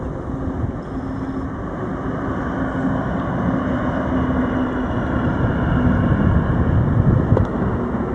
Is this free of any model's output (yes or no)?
yes